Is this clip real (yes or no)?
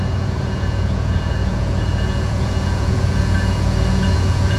no